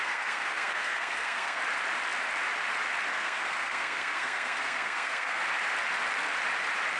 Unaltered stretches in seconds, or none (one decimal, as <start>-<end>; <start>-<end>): 1.6-3.1; 5.4-7.0